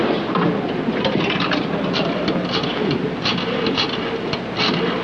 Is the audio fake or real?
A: real